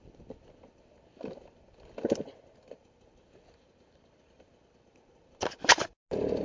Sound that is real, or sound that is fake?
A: real